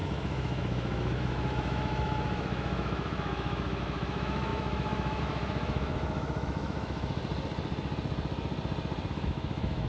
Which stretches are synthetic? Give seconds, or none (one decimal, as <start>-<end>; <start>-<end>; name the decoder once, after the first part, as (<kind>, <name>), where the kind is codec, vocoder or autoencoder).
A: 0.0-7.2 (autoencoder, DAC-VAE); 9.1-9.9